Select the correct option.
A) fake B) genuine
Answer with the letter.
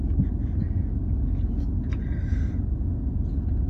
B